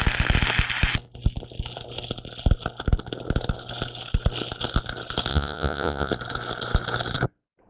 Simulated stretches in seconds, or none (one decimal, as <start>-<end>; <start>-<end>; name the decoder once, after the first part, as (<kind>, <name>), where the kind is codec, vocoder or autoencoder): 5.3-6.1 (vocoder, Vocos)